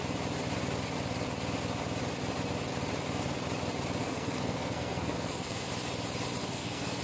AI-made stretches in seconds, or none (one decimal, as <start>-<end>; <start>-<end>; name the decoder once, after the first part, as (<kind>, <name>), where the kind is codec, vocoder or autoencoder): 4.0-5.7 (codec, SNAC); 6.4-7.0